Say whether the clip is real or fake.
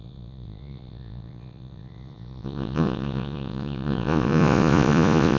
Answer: fake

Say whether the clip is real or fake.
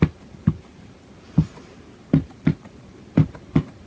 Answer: fake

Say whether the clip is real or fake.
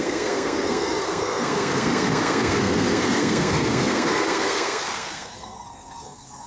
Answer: fake